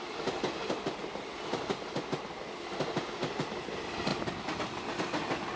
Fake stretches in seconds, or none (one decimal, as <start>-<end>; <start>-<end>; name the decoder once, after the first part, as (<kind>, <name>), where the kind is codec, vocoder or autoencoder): none